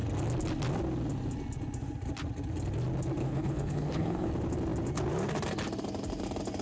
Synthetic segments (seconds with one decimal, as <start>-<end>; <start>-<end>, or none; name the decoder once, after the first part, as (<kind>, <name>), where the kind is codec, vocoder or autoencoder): 3.2-4.3 (codec, HILCodec)